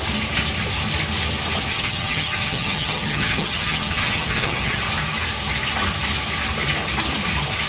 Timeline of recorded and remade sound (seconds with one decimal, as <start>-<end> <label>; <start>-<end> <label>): 0.0-1.7 recorded; 1.7-4.8 remade; 4.8-7.7 recorded